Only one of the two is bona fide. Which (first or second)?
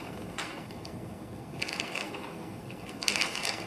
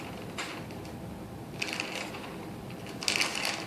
second